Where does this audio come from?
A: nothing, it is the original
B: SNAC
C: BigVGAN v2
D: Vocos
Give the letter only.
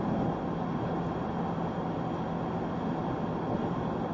A